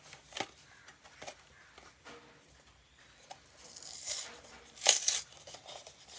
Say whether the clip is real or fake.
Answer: fake